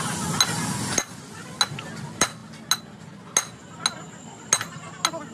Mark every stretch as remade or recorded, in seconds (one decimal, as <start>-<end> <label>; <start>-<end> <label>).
0.0-5.3 recorded